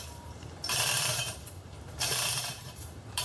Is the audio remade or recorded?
remade